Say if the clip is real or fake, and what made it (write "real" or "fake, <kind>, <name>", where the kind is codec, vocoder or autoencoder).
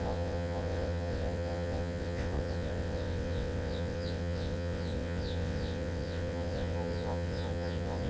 fake, vocoder, WaveNeXt